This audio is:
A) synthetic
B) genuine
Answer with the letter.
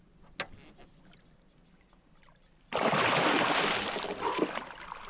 B